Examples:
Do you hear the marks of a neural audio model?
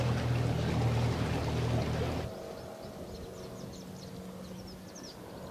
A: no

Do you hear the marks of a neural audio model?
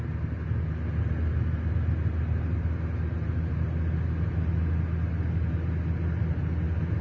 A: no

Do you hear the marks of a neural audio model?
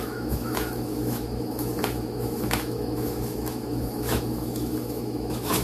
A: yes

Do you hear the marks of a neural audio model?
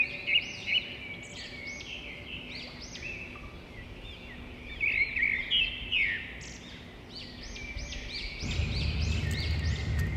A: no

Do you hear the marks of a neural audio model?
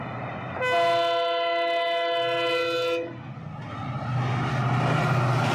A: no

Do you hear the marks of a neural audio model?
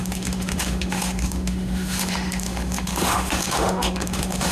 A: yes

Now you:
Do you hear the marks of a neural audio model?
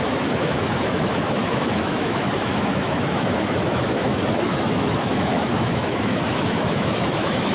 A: yes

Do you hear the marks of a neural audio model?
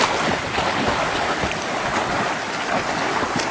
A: no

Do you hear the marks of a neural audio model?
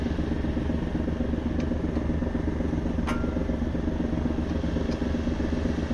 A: no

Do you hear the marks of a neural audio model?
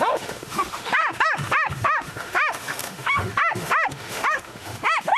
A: yes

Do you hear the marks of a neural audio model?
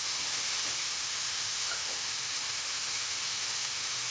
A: yes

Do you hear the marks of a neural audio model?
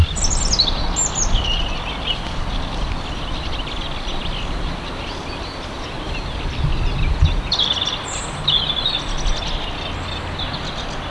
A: no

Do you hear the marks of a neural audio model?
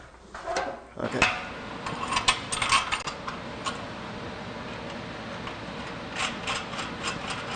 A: no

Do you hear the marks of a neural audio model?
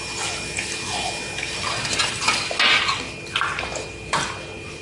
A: no